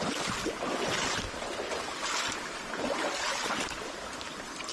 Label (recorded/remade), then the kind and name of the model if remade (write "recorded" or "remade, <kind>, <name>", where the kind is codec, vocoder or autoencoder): recorded